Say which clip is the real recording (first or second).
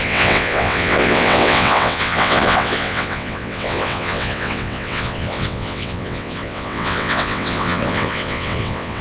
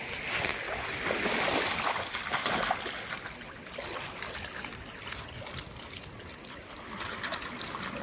second